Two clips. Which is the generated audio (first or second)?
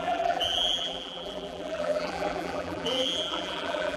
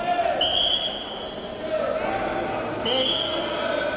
first